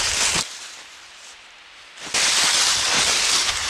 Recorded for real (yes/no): yes